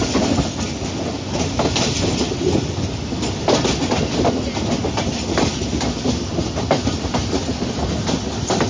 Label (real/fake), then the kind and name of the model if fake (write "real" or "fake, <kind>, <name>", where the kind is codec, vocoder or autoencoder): real